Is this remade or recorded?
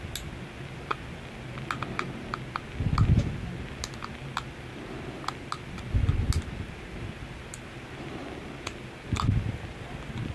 recorded